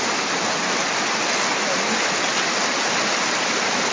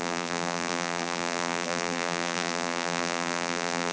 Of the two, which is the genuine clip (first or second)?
first